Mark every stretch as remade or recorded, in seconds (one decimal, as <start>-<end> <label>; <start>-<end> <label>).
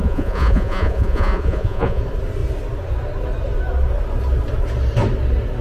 0.0-2.0 remade; 2.0-5.6 recorded